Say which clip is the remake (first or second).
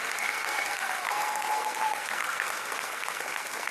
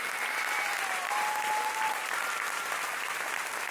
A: first